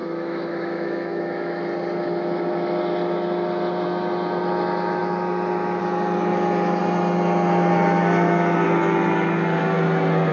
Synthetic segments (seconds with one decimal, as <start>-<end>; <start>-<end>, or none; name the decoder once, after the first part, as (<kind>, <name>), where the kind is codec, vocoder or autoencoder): 0.0-1.6 (autoencoder, DAC-VAE)